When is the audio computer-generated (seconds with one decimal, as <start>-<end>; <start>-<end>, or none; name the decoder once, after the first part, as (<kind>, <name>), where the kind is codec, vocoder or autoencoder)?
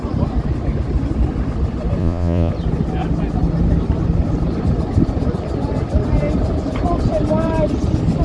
2.0-2.5 (vocoder, Vocos)